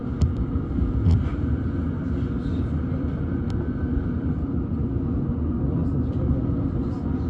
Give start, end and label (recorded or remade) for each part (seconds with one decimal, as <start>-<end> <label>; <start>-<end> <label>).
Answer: 0.0-7.3 recorded